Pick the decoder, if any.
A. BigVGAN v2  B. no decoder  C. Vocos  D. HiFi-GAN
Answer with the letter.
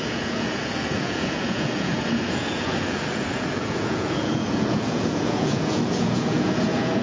C